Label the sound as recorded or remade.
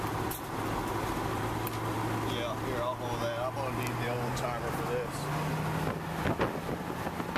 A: recorded